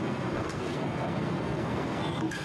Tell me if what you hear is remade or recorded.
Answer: remade